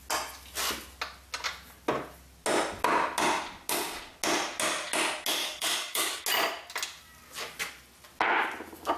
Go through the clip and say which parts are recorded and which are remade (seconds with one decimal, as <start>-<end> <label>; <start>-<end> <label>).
0.0-5.4 recorded; 5.4-6.2 remade; 6.2-9.0 recorded

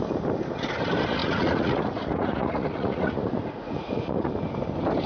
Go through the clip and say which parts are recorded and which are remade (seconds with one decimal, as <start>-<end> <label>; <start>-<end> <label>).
0.0-1.2 recorded; 1.2-4.3 remade; 4.3-5.1 recorded

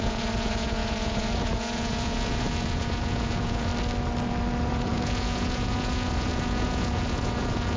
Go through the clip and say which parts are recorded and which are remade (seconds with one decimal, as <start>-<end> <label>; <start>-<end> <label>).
0.0-3.7 remade; 3.7-4.7 recorded; 4.7-7.8 remade

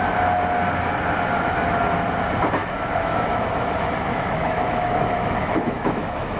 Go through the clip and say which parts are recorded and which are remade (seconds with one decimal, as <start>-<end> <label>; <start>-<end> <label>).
0.0-2.6 recorded; 2.6-6.4 remade

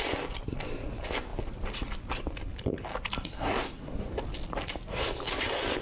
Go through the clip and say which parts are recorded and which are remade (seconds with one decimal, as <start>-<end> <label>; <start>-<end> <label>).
0.0-3.3 recorded; 3.3-4.1 remade; 4.1-5.8 recorded